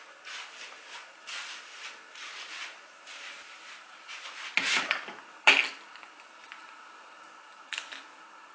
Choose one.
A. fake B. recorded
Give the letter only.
B